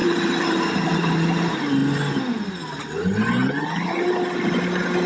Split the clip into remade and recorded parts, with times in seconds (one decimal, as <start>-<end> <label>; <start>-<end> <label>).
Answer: 0.0-1.8 remade; 1.8-5.1 recorded